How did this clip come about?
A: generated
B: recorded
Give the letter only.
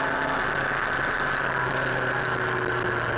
B